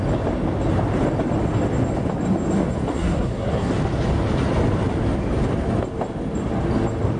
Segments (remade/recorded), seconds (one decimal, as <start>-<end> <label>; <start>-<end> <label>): 0.0-2.9 recorded; 2.9-3.7 remade; 3.7-7.2 recorded